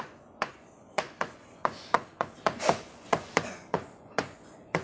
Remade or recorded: remade